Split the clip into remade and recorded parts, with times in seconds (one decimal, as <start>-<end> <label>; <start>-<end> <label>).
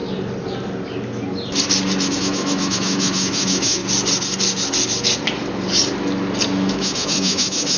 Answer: 0.0-2.2 recorded; 2.2-3.8 remade; 3.8-6.7 recorded; 6.7-7.8 remade